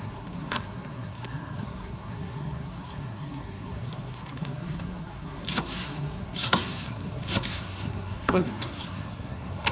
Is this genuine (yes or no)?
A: no